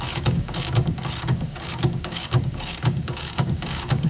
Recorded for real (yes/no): no